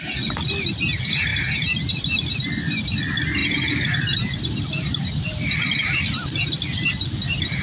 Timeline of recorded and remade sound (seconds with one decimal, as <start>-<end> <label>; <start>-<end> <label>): 0.0-3.4 recorded; 3.4-4.0 remade; 4.0-7.6 recorded